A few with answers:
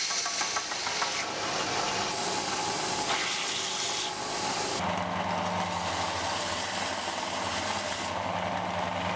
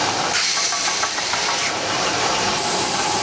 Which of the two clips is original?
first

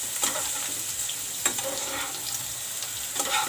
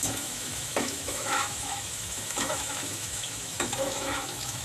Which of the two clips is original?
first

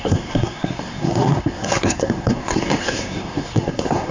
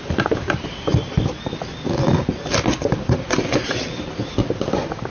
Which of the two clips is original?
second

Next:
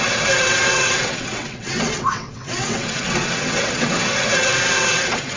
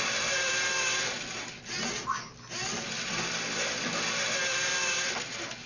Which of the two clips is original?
second